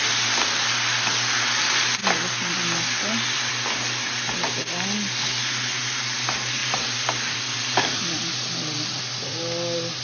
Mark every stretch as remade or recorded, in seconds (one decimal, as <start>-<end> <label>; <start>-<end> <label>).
0.0-6.6 recorded; 6.6-9.4 remade; 9.4-10.0 recorded